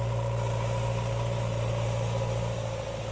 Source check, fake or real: real